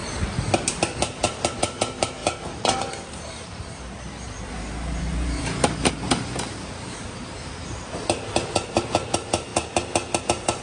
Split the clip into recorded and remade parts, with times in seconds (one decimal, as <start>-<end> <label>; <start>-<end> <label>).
0.0-1.0 recorded; 1.0-9.5 remade; 9.5-10.2 recorded; 10.2-10.6 remade